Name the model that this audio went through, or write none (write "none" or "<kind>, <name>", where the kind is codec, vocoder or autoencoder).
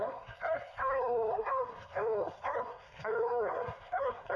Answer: codec, SNAC